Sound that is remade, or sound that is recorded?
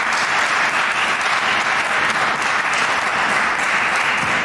recorded